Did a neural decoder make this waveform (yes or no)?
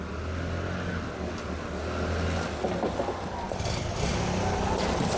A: no